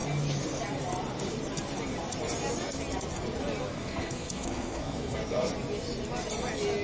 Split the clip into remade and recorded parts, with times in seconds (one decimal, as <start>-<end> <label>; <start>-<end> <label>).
0.0-3.7 recorded; 3.7-5.5 remade; 5.5-6.8 recorded